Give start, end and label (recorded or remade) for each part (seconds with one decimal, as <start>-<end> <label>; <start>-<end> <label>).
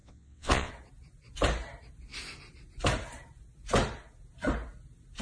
0.0-0.7 remade; 0.7-5.2 recorded